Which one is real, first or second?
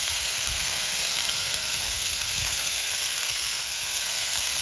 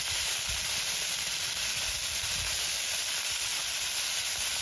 second